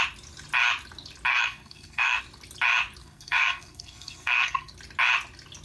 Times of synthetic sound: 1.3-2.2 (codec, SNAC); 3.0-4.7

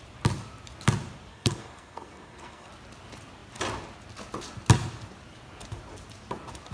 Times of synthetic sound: 1.3-2.7 (codec, SNAC)

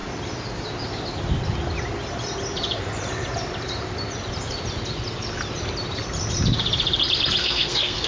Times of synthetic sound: 7.4-8.1 (codec, SNAC)

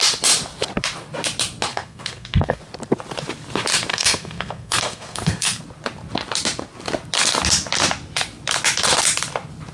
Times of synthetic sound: 1.7-2.6 (codec, SNAC); 3.9-5.6

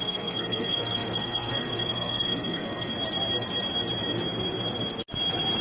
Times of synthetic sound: 0.0-2.9 (codec, SNAC)